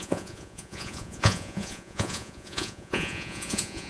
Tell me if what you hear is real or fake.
fake